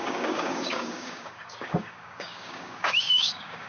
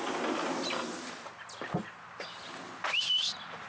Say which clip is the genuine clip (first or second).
second